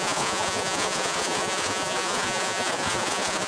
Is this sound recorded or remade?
remade